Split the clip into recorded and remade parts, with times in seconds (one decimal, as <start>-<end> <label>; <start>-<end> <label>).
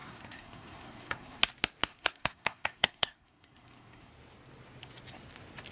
0.0-1.4 remade; 1.4-1.9 recorded; 1.9-4.1 remade; 4.1-5.7 recorded